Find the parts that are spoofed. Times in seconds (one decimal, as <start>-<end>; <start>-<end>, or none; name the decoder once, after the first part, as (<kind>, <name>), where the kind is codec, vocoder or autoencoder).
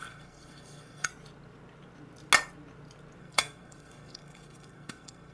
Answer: 0.0-1.1 (codec, SNAC); 3.2-5.3